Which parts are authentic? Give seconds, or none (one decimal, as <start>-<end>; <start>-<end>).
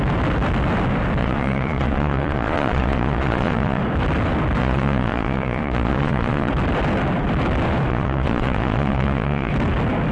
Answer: 0.0-1.2; 3.8-4.6; 6.5-7.9; 9.5-10.1